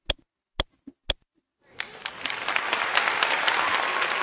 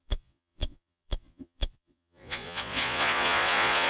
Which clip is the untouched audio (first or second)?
first